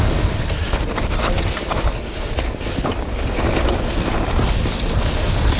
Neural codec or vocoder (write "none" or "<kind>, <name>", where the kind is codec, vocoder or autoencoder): none